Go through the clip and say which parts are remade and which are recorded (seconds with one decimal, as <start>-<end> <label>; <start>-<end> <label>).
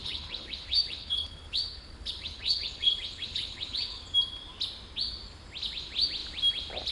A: 0.0-4.0 remade; 4.0-6.9 recorded